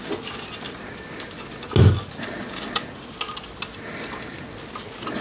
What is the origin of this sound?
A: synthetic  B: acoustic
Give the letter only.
B